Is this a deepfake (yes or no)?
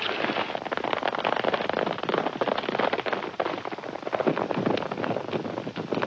no